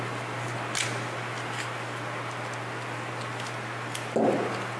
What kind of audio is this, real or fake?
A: real